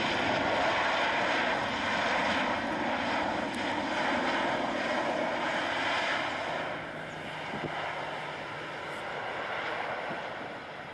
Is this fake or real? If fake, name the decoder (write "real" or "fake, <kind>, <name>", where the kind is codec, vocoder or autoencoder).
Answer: real